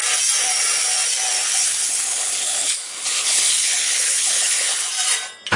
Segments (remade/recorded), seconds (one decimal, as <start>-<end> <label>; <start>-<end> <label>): 0.0-1.5 recorded; 1.5-4.9 remade; 4.9-5.6 recorded